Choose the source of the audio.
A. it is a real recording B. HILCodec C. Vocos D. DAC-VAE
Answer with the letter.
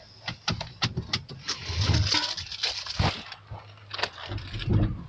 A